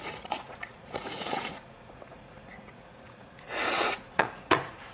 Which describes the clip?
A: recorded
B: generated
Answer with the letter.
B